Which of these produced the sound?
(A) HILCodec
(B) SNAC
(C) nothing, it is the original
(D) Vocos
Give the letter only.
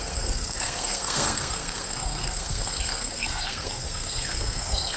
B